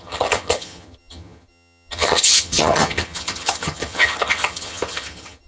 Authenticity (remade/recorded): remade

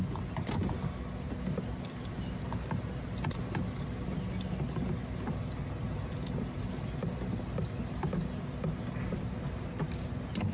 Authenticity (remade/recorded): recorded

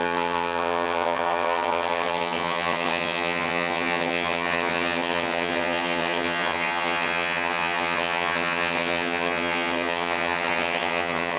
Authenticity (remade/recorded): remade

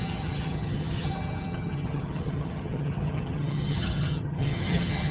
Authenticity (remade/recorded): remade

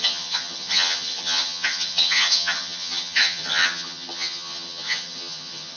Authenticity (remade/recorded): remade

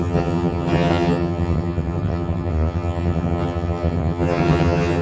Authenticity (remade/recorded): remade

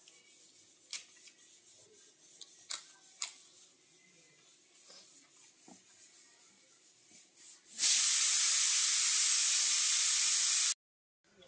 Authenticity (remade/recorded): recorded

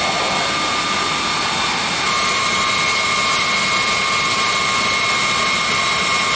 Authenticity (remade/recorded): recorded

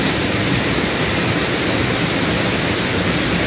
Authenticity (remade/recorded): recorded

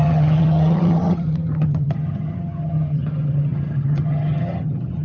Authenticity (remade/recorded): remade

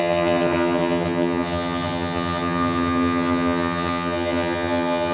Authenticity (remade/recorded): remade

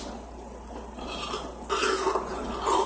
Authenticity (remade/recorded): recorded